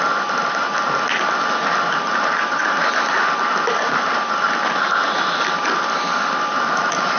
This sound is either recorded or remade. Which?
recorded